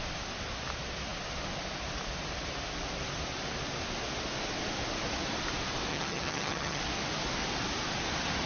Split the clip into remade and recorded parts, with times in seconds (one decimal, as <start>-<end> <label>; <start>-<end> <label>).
0.0-5.9 recorded; 5.9-6.8 remade; 6.8-8.5 recorded